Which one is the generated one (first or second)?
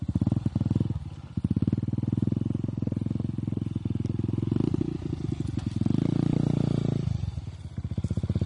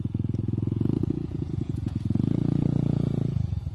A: second